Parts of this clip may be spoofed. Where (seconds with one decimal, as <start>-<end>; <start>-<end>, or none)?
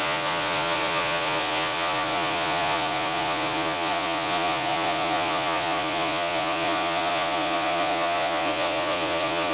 0.0-9.5